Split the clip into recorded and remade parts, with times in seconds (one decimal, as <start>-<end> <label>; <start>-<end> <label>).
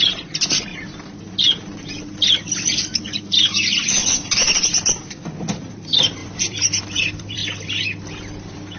0.0-0.7 remade; 0.7-2.4 recorded; 2.4-7.4 remade; 7.4-8.4 recorded; 8.4-8.8 remade